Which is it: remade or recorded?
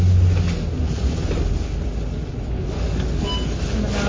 recorded